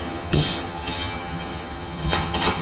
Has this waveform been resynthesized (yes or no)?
yes